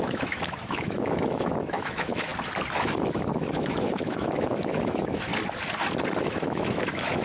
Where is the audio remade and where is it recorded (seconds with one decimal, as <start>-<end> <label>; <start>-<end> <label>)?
0.0-2.3 remade; 2.3-3.1 recorded; 3.1-5.3 remade; 5.3-6.2 recorded; 6.2-7.2 remade